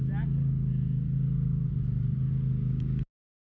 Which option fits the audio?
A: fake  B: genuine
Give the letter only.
B